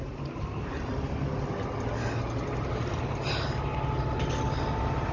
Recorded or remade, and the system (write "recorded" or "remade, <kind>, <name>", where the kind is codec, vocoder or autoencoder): recorded